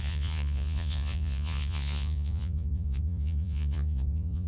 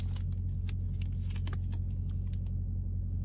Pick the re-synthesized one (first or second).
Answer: first